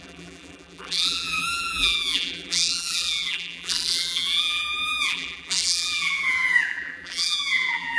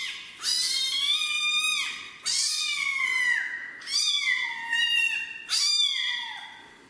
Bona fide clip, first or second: second